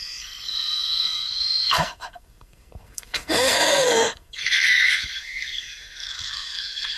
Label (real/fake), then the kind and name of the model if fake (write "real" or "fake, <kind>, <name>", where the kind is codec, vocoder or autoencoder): fake, codec, SNAC